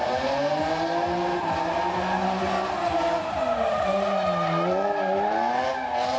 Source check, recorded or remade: recorded